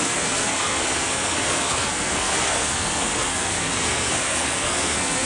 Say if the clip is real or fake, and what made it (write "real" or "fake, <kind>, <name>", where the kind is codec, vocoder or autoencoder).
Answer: fake, codec, SNAC